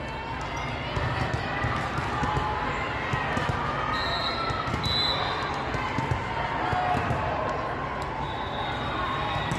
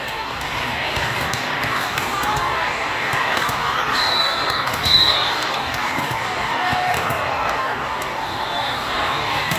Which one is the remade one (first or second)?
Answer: second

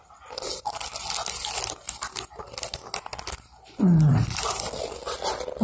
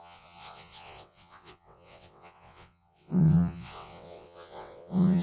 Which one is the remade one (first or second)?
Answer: second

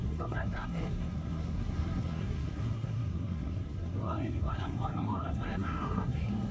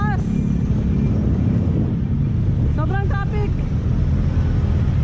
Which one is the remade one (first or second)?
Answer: first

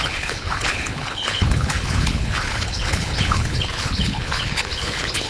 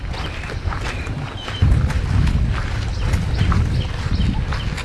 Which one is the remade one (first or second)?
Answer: first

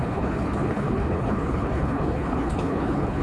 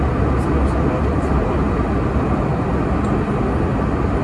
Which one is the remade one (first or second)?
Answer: first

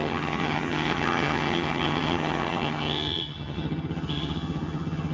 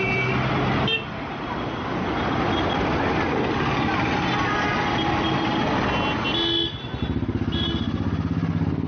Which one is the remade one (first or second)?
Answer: first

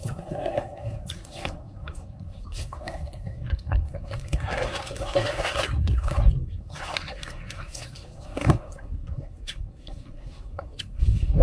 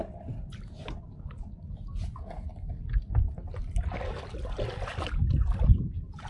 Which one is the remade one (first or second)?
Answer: first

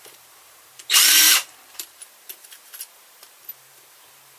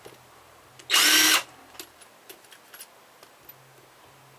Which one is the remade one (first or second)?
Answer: first